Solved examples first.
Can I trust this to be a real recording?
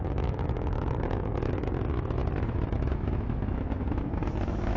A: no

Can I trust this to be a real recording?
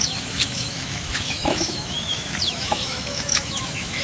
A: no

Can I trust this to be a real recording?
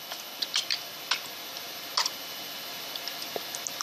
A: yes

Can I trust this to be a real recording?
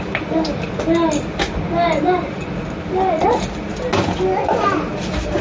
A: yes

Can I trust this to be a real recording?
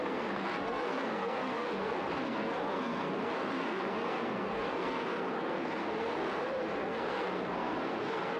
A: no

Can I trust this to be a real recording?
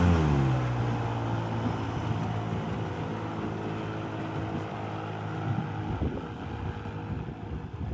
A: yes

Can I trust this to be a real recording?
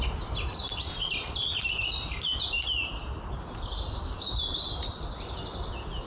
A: yes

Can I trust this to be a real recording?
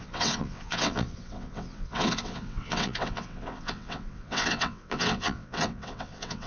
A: no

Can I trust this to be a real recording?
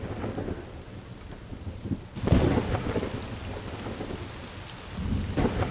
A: yes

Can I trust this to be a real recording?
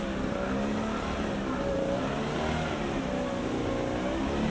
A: yes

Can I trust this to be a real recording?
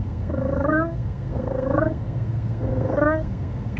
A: no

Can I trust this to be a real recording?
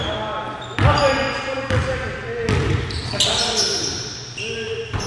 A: yes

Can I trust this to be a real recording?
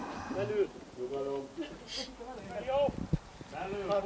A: yes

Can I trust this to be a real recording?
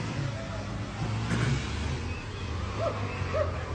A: yes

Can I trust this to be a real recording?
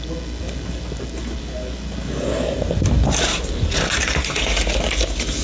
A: yes